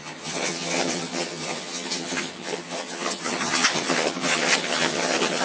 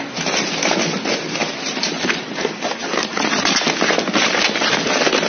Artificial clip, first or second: first